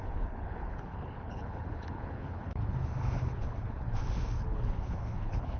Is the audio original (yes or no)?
no